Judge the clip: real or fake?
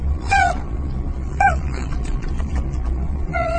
fake